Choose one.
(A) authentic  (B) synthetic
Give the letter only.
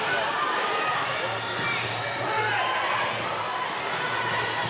A